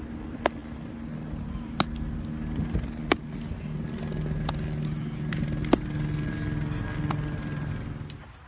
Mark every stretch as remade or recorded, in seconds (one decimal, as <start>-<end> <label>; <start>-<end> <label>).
0.0-8.5 recorded